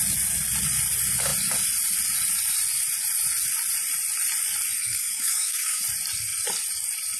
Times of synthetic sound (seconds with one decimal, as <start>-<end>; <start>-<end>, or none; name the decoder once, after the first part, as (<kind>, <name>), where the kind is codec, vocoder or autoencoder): 4.8-5.8 (codec, DAC)